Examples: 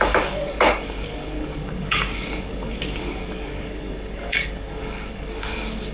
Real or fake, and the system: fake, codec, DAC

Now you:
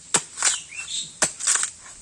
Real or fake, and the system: real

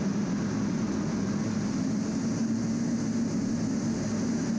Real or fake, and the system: real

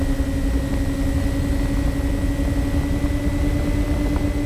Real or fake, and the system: real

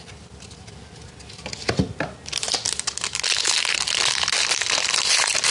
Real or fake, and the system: real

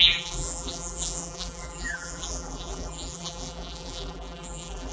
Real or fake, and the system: fake, vocoder, BigVGAN v2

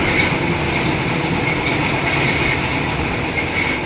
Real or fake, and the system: real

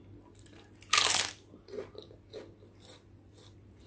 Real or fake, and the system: real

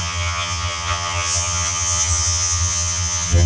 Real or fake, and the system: fake, vocoder, HiFi-GAN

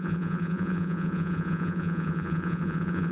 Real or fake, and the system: fake, vocoder, Vocos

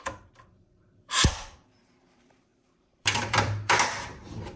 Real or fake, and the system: fake, vocoder, BigVGAN v2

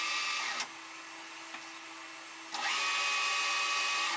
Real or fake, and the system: real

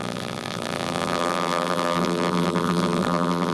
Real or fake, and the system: fake, vocoder, BigVGAN v2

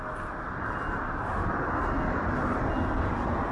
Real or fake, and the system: real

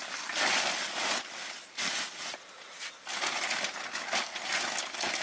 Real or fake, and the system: real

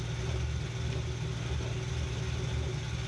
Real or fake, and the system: real